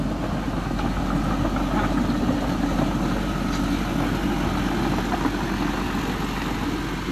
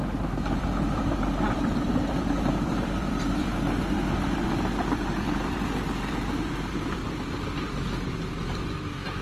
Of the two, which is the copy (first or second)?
second